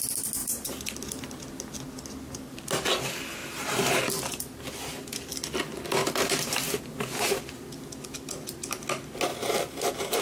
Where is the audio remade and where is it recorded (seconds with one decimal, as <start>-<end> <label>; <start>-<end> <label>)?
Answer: 0.0-0.4 recorded; 0.4-1.4 remade; 1.4-3.4 recorded; 3.4-4.0 remade; 4.0-6.0 recorded; 6.0-6.8 remade; 6.8-9.3 recorded; 9.3-10.2 remade